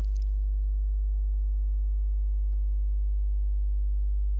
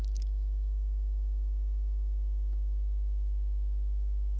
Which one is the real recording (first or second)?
first